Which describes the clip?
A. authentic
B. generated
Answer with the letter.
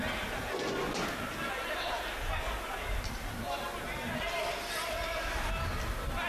A